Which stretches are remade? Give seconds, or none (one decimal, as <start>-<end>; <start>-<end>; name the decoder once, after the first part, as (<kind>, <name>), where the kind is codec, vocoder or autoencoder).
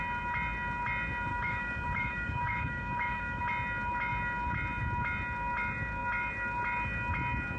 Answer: 1.3-3.4 (autoencoder, DAC-VAE)